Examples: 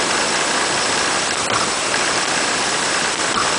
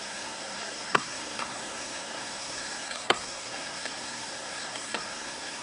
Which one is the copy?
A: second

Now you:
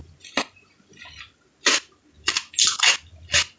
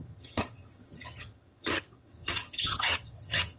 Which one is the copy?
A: second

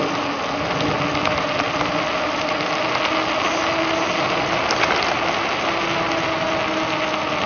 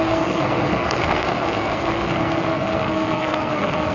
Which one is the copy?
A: second